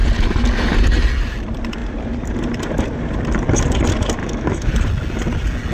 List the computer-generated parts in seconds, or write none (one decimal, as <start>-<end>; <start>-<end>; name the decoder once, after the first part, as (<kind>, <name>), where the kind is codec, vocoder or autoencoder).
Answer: 4.2-4.7 (autoencoder, DAC-VAE)